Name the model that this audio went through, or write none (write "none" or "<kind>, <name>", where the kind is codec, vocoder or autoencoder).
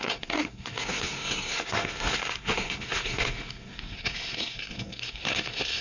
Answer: codec, SNAC